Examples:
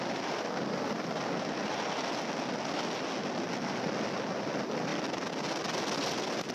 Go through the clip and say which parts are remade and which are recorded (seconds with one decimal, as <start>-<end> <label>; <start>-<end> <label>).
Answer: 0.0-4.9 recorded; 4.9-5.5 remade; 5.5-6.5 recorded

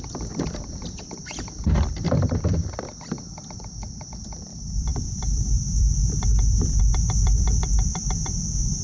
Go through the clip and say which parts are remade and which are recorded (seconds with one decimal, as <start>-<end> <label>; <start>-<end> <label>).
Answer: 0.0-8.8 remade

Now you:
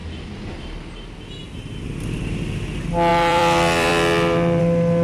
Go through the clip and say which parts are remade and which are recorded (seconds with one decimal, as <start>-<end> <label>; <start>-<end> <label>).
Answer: 0.0-3.1 recorded; 3.1-4.6 remade; 4.6-5.0 recorded